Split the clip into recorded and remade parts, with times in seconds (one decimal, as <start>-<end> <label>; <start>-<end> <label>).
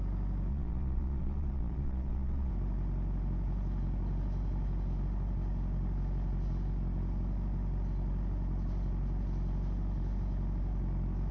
0.0-0.5 recorded; 0.5-2.5 remade; 2.5-11.3 recorded